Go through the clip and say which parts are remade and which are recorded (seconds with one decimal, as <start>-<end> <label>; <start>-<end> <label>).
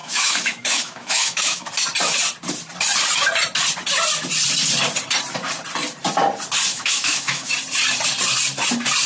0.0-1.7 remade; 1.7-6.7 recorded; 6.7-7.5 remade; 7.5-9.1 recorded